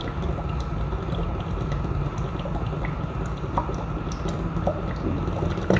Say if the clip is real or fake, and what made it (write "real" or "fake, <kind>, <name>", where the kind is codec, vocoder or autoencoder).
real